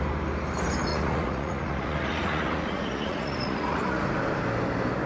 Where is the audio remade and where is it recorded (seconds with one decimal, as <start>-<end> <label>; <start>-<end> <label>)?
0.0-0.9 recorded; 0.9-4.0 remade; 4.0-5.1 recorded